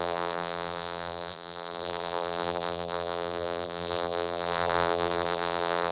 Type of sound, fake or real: fake